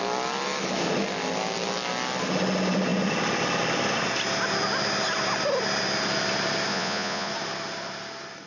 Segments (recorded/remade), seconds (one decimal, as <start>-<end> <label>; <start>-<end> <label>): 0.0-6.7 recorded; 6.7-7.3 remade; 7.3-8.5 recorded